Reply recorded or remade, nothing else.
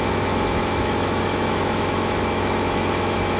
remade